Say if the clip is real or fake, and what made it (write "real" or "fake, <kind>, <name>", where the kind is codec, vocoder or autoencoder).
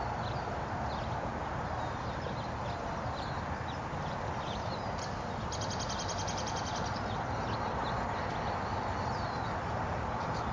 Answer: real